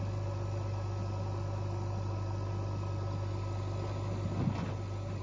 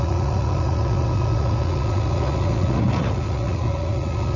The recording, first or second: first